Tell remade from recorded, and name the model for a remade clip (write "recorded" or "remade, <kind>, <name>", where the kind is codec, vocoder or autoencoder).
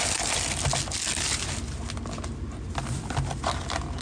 recorded